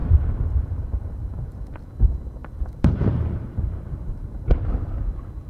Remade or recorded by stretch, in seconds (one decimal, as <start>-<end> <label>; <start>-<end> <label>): 0.0-1.9 remade; 1.9-2.4 recorded; 2.4-5.0 remade; 5.0-5.5 recorded